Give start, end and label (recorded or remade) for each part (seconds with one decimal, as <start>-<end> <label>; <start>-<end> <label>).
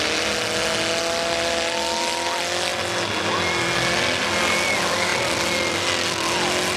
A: 0.0-6.8 recorded